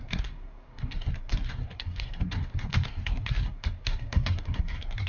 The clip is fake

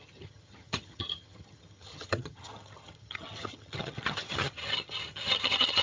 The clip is fake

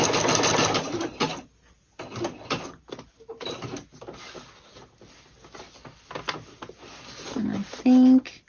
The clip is real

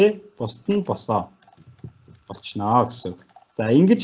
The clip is real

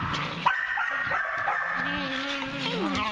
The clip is real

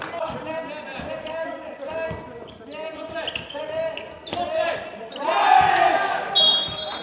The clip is real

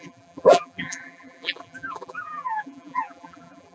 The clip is fake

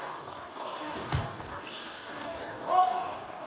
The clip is fake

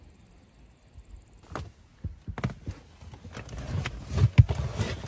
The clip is real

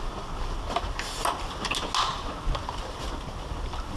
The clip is real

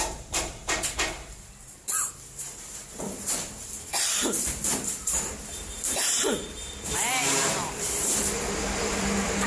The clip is fake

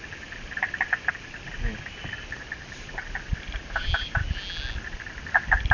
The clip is real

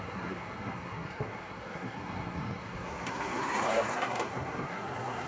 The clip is fake